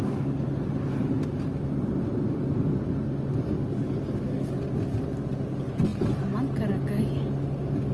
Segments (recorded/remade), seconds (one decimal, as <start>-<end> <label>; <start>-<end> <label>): 0.0-1.0 recorded; 1.0-3.8 remade; 3.8-7.9 recorded